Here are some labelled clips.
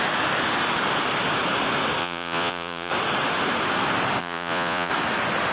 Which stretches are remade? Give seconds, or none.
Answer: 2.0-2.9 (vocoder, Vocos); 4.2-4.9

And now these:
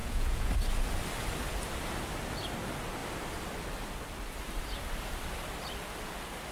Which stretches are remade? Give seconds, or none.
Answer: 0.0-0.5 (vocoder, Vocos)

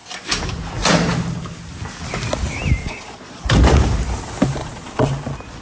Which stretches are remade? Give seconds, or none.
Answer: 2.8-3.4 (vocoder, Vocos); 4.6-5.1

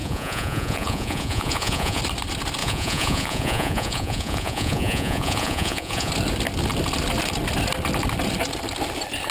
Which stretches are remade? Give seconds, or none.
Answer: 0.0-2.0 (vocoder, Vocos); 2.6-6.1

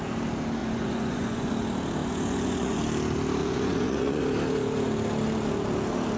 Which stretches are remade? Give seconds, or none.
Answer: 0.6-1.5 (vocoder, Vocos); 2.0-2.8; 3.4-4.2

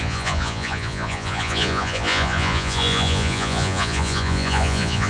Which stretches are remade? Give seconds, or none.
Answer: 0.0-5.1 (vocoder, Vocos)

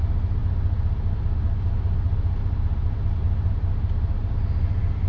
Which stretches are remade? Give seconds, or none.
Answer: none

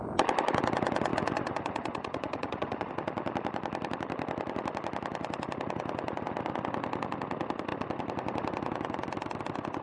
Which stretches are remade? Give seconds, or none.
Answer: 1.1-2.9 (vocoder, Vocos)